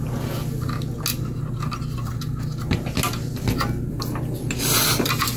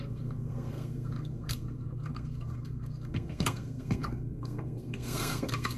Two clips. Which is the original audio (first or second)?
first